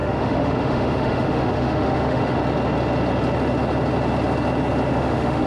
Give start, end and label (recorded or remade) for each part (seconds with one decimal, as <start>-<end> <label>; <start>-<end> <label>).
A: 0.0-2.4 remade; 2.4-4.9 recorded; 4.9-5.5 remade